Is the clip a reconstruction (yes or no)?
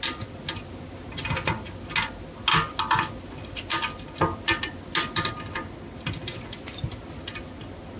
no